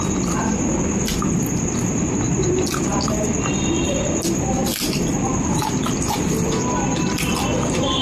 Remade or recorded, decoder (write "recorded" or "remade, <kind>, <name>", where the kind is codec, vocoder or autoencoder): recorded